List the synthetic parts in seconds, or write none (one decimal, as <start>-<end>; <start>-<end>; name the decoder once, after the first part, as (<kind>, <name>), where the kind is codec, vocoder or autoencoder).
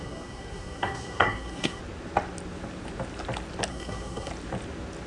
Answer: 0.0-1.8 (codec, SNAC); 3.7-4.3